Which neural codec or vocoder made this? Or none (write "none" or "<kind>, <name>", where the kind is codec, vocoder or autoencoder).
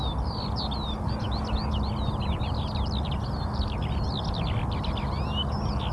none